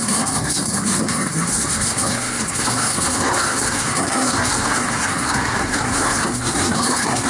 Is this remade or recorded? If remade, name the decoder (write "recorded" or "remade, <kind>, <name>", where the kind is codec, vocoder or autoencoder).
remade, codec, SNAC